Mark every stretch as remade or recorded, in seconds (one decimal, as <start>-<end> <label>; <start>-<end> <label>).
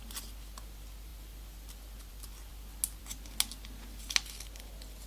0.0-5.1 recorded